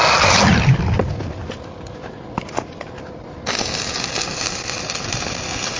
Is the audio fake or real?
real